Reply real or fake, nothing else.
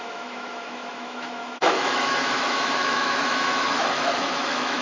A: fake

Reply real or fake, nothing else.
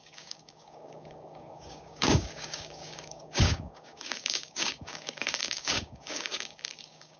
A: fake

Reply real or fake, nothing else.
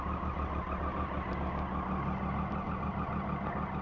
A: real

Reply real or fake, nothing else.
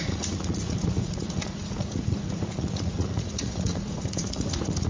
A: fake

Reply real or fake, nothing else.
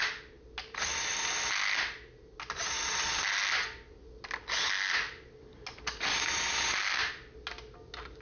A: real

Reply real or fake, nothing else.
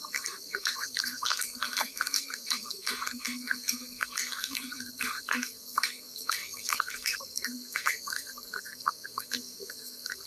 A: fake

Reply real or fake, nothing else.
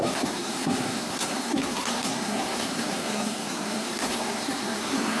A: fake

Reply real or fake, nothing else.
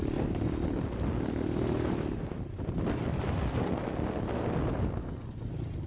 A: real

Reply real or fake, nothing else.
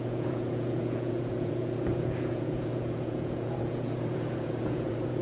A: fake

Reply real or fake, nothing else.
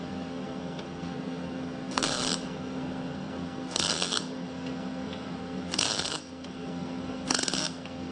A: fake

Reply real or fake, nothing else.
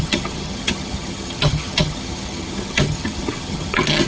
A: fake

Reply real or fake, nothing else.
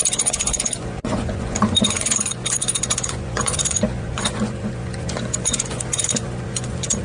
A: fake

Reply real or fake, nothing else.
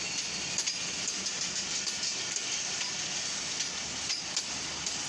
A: real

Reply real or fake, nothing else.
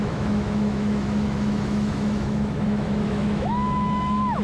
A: fake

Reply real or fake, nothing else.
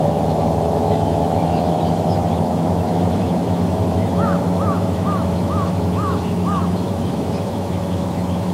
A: fake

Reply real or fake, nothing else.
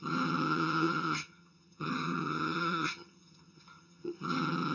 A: fake